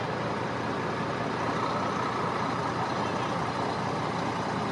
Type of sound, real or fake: real